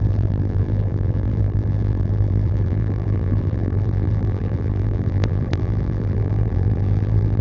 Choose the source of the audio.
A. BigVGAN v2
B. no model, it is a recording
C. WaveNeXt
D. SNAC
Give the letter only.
A